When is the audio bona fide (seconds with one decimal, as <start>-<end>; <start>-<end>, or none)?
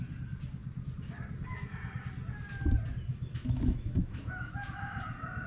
0.0-3.1; 5.0-5.5